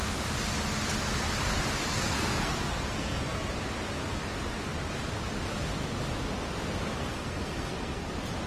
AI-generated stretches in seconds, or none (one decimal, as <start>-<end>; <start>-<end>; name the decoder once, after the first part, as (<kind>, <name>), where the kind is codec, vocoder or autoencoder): 1.9-3.5 (codec, SNAC); 7.0-8.1